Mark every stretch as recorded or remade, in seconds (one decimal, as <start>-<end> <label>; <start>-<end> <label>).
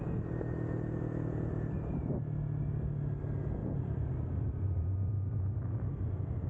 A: 0.0-3.6 recorded; 3.6-4.8 remade; 4.8-6.5 recorded